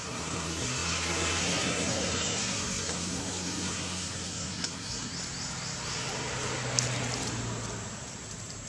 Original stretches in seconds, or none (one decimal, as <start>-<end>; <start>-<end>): 5.1-8.7

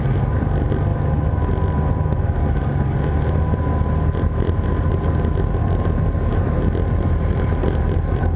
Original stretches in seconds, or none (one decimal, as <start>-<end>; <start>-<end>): 0.0-8.4

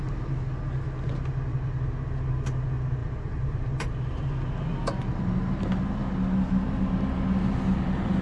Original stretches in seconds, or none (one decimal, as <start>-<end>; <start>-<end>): 0.0-3.0; 4.3-8.2

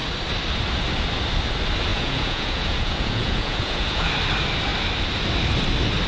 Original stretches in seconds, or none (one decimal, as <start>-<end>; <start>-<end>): 0.0-1.9; 4.1-6.1

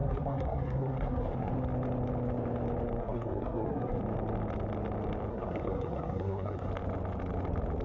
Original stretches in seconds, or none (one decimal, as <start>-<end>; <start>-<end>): 1.5-3.0; 4.0-5.3; 6.7-7.8